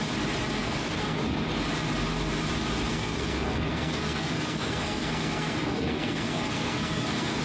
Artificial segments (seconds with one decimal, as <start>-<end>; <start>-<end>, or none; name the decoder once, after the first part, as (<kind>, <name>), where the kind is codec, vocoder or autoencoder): 0.6-1.2 (codec, SNAC); 2.9-7.4